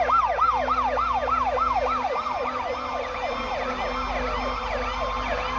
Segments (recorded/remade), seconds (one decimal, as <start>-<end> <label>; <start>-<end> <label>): 0.0-5.6 recorded